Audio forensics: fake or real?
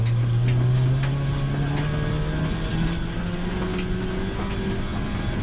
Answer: real